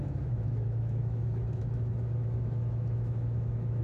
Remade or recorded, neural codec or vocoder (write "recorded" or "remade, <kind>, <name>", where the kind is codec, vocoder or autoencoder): remade, autoencoder, DAC-VAE